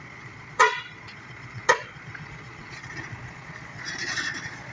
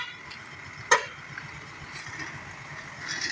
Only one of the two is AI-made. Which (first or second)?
first